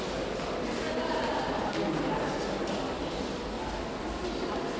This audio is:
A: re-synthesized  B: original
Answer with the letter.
B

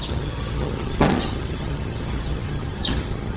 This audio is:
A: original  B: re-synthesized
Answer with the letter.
B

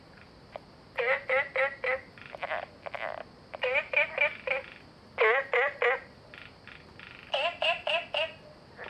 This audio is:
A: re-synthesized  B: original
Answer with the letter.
B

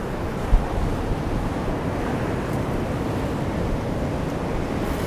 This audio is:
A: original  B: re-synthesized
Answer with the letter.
A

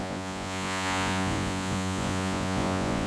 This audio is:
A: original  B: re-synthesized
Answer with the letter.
B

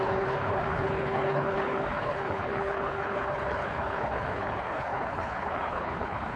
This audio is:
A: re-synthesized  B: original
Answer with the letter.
A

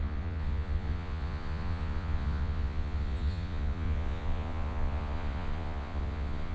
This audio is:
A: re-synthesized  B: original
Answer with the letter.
A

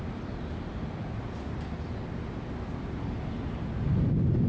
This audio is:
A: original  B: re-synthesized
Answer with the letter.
A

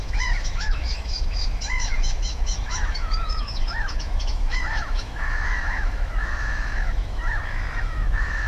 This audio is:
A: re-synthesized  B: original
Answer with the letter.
A